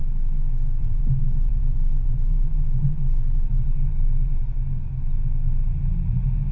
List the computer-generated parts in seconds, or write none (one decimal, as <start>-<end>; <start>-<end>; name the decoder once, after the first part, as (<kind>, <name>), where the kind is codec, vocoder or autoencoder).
0.8-4.6 (vocoder, BigVGAN v2); 6.1-6.5